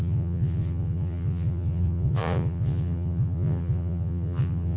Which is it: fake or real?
fake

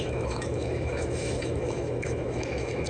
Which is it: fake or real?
fake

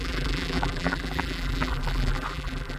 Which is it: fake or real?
fake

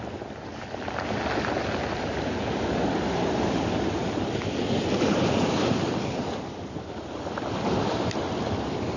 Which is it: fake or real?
real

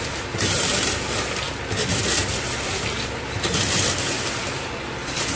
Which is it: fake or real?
real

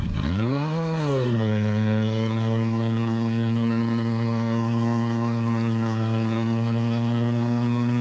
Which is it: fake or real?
fake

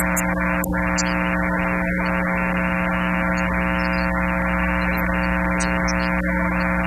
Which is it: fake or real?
real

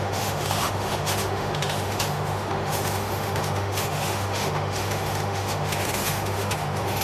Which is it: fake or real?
fake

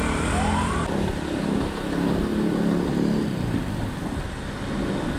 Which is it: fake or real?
real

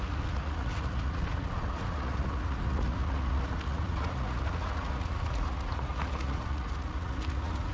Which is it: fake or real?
fake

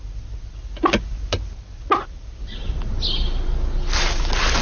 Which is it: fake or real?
real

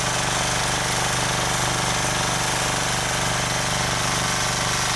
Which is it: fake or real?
real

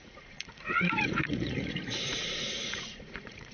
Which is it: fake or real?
fake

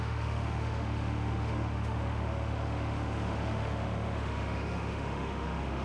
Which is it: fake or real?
fake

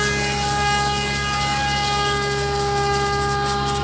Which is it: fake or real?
fake